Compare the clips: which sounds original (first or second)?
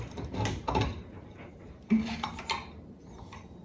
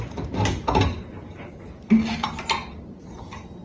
second